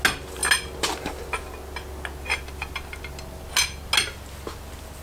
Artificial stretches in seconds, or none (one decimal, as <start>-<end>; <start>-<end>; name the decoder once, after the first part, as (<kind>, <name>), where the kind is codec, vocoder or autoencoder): none